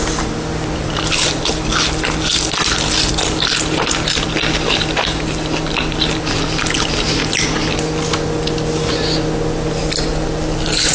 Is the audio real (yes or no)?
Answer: yes